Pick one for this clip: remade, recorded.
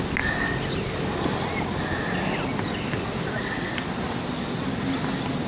recorded